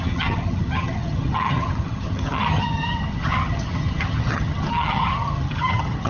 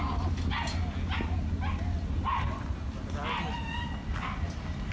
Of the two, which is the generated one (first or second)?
first